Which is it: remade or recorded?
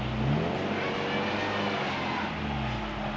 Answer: recorded